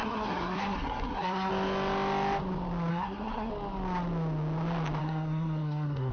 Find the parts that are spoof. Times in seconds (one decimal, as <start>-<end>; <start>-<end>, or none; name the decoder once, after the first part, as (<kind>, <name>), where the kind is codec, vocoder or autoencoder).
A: 0.0-1.5 (codec, SNAC); 2.9-3.5; 5.0-6.1